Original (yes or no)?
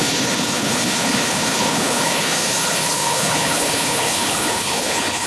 no